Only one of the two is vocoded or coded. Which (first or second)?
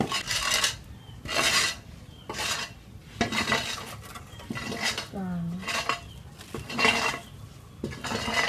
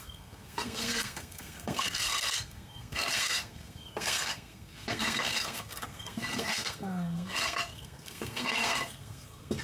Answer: second